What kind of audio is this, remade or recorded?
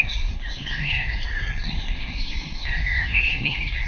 remade